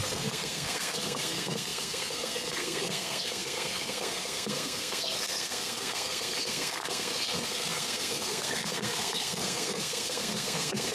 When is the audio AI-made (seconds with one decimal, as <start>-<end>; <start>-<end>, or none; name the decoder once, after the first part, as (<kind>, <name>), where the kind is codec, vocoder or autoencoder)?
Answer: 0.0-10.9 (codec, SNAC)